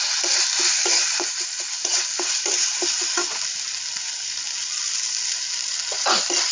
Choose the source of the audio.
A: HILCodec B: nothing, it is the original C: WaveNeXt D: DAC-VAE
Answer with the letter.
B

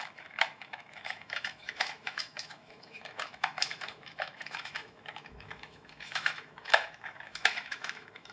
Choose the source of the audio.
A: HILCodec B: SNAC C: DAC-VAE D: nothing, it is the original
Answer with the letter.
C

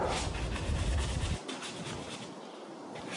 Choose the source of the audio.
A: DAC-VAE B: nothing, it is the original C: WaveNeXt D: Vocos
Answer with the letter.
B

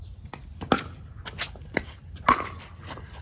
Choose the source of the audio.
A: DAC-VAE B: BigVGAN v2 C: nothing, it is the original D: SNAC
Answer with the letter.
C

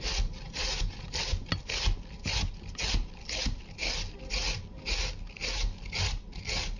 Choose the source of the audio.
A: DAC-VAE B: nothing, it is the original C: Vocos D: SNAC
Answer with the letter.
B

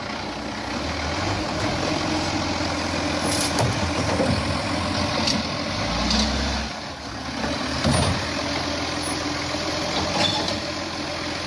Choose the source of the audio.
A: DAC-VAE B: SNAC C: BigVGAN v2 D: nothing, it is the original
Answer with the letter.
D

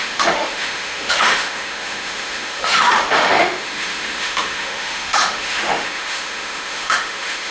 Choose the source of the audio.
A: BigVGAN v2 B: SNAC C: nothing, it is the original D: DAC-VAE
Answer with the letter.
D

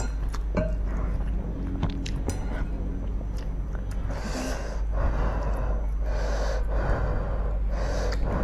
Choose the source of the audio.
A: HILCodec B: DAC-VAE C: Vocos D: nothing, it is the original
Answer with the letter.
D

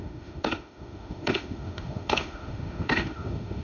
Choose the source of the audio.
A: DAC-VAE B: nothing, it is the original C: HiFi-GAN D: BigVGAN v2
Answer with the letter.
A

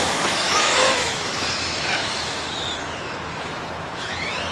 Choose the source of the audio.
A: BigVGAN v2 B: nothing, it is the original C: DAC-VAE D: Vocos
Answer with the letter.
C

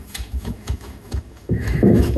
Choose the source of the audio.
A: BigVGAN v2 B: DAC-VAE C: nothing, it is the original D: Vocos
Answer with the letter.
B